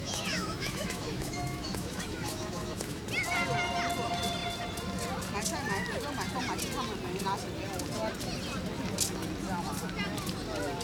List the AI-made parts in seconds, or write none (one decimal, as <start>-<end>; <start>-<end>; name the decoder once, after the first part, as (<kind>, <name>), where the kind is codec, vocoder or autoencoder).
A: 0.0-3.0 (autoencoder, DAC-VAE)